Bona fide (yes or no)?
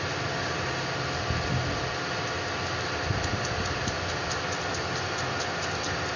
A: yes